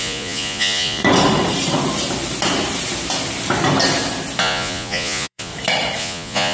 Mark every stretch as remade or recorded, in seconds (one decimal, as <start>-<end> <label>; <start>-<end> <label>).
0.0-1.0 remade; 1.0-4.4 recorded; 4.4-5.5 remade; 5.5-6.0 recorded; 6.0-6.5 remade